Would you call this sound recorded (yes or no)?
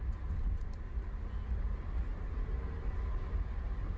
yes